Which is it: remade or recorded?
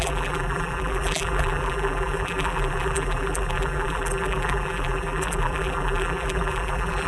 remade